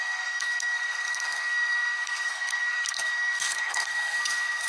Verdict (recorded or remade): remade